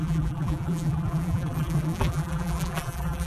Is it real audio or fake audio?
fake